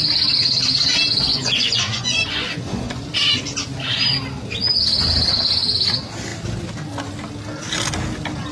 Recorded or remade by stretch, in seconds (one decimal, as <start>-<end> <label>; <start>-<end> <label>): 0.0-1.3 recorded; 1.3-3.0 remade; 3.0-8.5 recorded